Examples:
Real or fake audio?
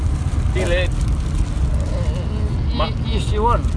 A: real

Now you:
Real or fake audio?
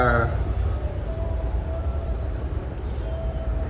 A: real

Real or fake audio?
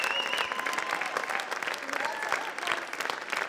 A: real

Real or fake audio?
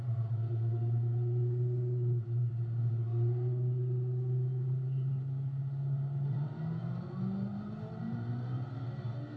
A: real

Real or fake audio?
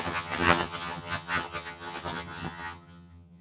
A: fake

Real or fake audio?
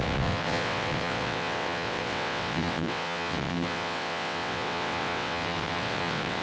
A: fake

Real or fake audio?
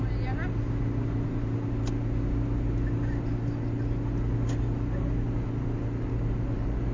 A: real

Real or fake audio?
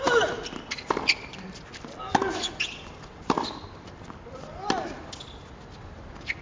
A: real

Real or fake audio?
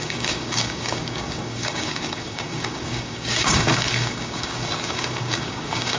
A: fake